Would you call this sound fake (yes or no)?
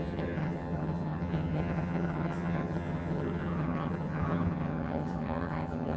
yes